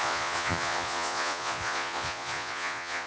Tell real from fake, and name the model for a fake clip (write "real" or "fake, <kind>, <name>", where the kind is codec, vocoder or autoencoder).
fake, vocoder, Vocos